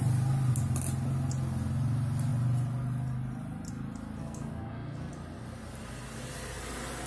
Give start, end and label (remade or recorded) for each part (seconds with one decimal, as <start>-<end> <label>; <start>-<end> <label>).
0.0-4.2 recorded; 4.2-5.1 remade; 5.1-7.1 recorded